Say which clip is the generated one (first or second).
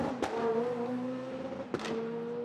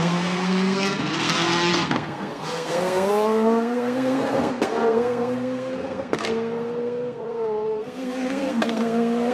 second